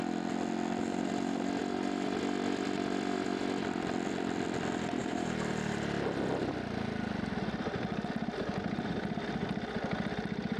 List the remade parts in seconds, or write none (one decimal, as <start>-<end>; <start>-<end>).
1.6-2.2; 5.0-6.5